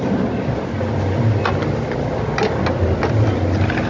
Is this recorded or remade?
recorded